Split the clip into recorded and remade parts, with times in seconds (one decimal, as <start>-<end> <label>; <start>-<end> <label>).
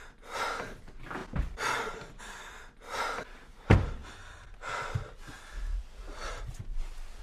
0.0-7.2 recorded